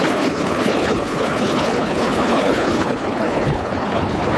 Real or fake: fake